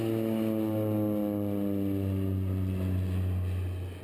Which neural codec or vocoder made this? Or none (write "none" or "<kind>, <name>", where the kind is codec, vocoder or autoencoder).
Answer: none